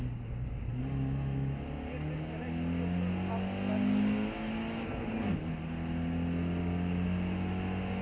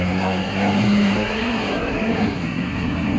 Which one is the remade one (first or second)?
second